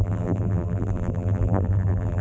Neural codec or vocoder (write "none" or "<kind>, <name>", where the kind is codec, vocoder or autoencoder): vocoder, BigVGAN v2